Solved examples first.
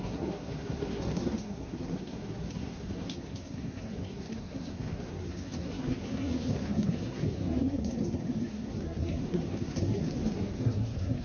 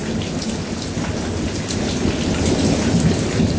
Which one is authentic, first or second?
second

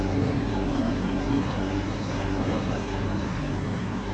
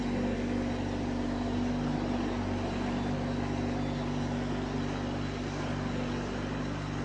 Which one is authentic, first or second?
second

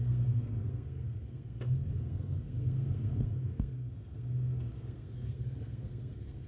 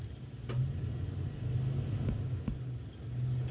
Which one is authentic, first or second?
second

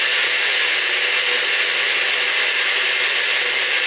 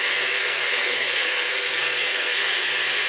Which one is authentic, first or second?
first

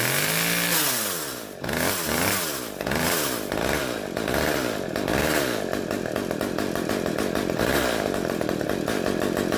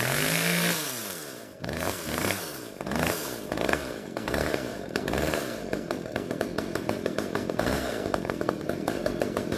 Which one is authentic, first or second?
first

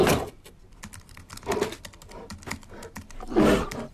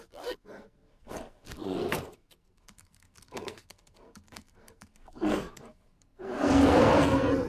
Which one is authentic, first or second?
first